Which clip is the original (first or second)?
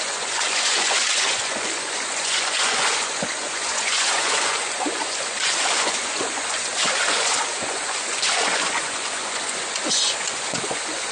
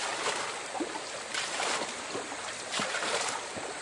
second